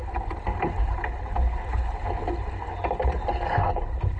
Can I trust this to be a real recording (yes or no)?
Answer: yes